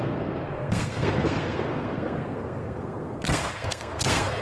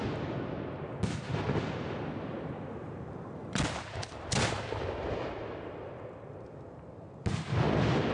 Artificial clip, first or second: first